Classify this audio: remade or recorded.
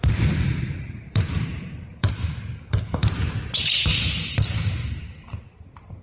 remade